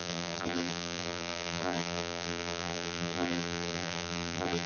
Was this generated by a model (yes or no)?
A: yes